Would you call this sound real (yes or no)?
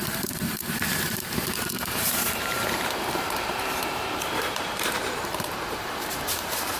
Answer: no